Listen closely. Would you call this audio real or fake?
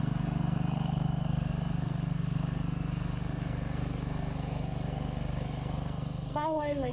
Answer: fake